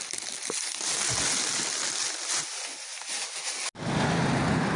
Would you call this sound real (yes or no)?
yes